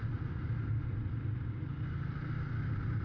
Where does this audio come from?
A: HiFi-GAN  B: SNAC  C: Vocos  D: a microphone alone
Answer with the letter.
D